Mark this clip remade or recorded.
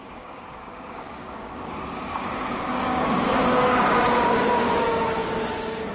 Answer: remade